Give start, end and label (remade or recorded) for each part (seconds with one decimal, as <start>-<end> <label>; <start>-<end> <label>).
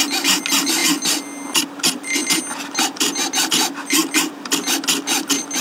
0.0-5.6 recorded